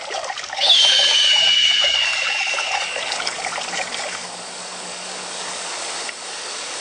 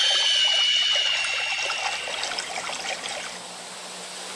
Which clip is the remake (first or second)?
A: first